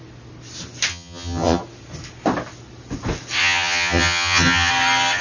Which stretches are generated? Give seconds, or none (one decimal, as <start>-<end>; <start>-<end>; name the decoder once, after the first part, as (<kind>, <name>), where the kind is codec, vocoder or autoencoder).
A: 0.9-1.6 (vocoder, HiFi-GAN); 3.4-4.7